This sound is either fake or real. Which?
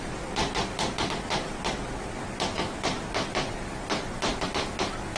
real